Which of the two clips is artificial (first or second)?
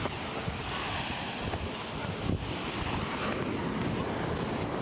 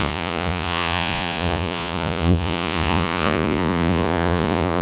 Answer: second